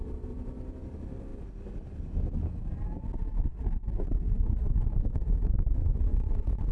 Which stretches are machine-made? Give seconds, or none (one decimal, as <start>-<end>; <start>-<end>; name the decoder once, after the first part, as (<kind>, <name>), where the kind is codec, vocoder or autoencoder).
5.8-6.7 (vocoder, Vocos)